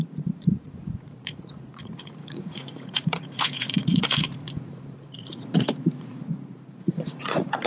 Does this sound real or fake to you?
fake